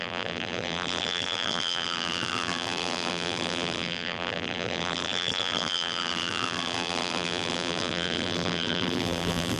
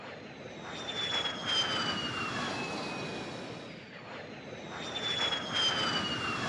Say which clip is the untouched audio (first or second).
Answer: second